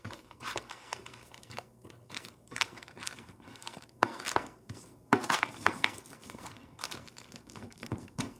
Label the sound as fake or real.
fake